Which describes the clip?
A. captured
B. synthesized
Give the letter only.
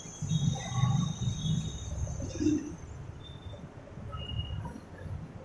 A